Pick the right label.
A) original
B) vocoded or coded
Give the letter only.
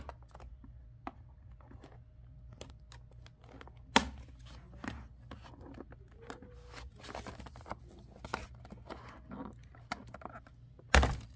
A